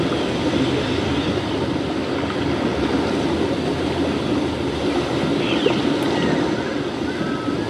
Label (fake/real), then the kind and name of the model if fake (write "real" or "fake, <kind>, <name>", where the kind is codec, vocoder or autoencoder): real